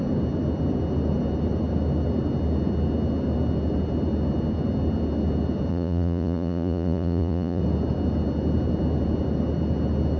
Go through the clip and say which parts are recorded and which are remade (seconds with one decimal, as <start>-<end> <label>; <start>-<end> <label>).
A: 0.0-5.7 recorded; 5.7-7.6 remade; 7.6-10.2 recorded